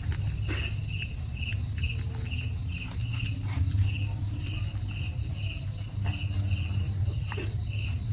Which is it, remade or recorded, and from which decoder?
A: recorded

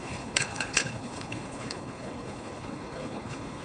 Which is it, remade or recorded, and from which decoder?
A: remade, codec, HILCodec